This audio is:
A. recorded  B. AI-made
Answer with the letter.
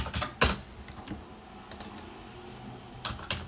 A